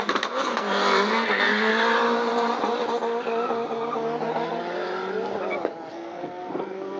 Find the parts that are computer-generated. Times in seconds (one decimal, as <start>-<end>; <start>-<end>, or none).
0.0-1.7; 5.9-7.0